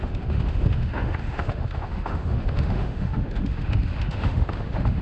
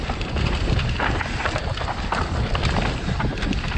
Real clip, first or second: second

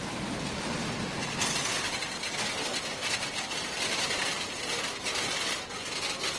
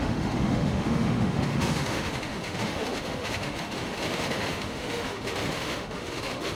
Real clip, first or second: first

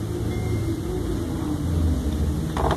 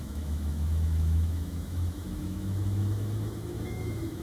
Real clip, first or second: first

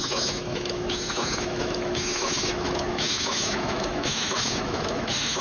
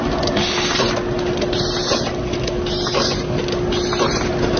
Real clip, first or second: second